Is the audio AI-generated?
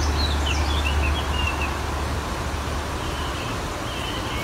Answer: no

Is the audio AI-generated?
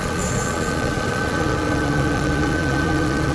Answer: yes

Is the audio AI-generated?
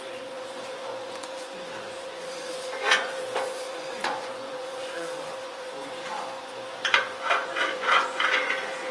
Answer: yes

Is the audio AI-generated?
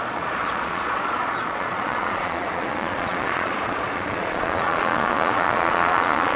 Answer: yes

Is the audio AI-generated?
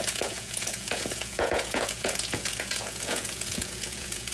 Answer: yes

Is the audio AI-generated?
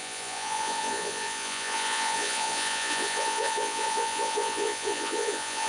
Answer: yes